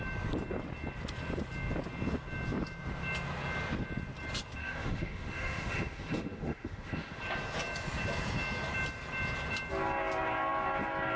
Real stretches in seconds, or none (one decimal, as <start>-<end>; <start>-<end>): 0.0-4.6; 7.2-11.2